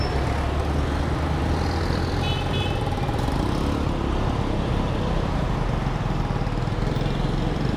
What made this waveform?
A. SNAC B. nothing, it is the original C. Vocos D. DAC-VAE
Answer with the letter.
B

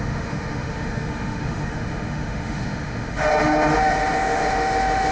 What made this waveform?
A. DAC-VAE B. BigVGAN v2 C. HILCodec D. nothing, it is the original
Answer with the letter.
A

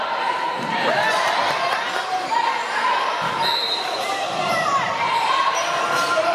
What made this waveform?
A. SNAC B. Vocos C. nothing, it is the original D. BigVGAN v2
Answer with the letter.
D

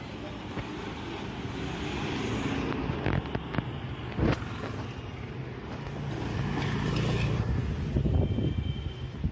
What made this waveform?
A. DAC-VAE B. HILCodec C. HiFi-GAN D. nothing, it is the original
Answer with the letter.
D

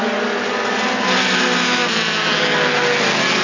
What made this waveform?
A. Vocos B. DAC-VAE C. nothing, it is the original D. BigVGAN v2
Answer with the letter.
C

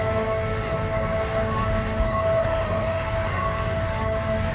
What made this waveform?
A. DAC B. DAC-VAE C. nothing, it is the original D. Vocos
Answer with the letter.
B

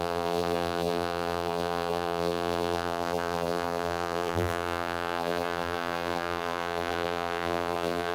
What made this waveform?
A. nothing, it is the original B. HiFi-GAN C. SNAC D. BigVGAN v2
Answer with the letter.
D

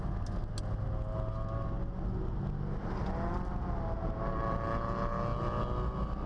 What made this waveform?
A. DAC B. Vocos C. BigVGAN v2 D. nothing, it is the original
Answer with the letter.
D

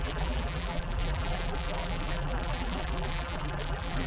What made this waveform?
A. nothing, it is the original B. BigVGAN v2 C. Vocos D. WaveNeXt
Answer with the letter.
B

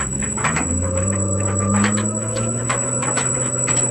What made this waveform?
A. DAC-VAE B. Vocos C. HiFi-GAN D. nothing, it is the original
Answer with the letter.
A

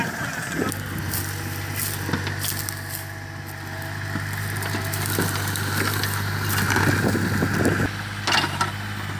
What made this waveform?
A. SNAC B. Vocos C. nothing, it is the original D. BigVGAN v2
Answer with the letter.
C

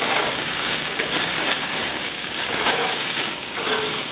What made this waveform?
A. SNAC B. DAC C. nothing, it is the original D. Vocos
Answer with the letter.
B